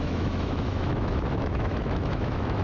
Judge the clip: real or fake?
fake